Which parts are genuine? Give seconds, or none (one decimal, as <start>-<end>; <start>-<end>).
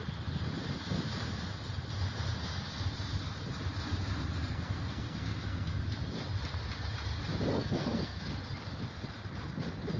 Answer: 0.0-4.4; 5.8-7.5; 8.2-10.0